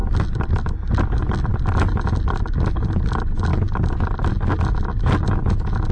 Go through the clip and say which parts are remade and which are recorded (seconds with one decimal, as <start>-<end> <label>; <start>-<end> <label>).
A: 0.0-5.9 recorded